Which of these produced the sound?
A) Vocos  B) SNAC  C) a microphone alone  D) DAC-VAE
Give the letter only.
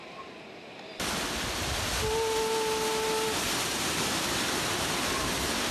C